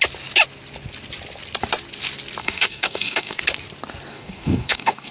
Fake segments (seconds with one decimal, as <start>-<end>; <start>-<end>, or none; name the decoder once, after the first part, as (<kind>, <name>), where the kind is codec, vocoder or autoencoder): 2.4-3.4 (codec, DAC); 4.1-5.1